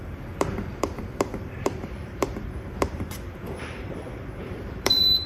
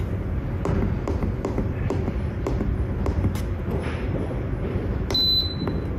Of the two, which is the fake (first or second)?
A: first